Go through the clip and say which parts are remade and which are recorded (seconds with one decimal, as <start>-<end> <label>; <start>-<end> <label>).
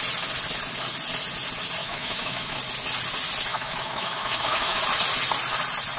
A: 0.0-1.8 recorded; 1.8-2.6 remade; 2.6-3.5 recorded; 3.5-4.8 remade; 4.8-6.0 recorded